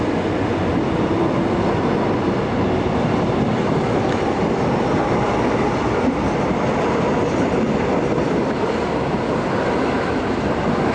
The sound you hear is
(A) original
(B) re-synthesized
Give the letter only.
A